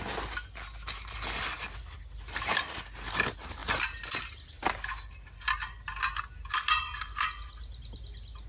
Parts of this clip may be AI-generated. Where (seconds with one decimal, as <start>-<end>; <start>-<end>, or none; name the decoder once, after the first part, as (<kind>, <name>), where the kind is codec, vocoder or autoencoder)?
none